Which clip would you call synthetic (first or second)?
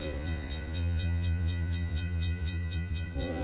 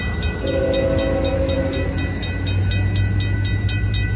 first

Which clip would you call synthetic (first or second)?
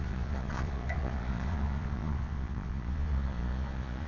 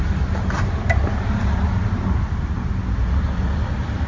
first